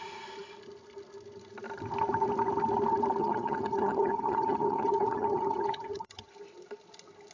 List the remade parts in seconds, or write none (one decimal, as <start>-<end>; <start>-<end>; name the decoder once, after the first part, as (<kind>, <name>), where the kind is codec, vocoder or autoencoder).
3.2-6.3 (vocoder, HiFi-GAN)